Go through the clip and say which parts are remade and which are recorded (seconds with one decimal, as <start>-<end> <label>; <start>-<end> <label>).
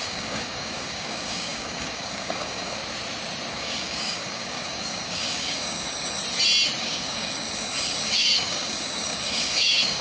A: 0.0-2.8 remade; 2.8-3.5 recorded; 3.5-6.2 remade; 6.2-6.8 recorded; 6.8-10.0 remade